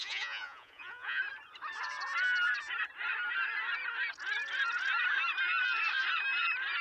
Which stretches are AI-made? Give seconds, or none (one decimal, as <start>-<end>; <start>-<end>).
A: 0.0-1.2